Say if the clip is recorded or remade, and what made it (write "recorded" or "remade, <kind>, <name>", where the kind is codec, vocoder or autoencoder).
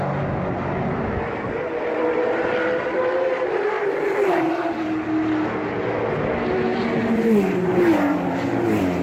recorded